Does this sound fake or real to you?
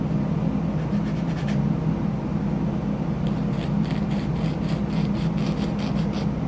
real